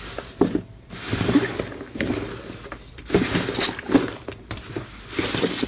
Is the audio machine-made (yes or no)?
no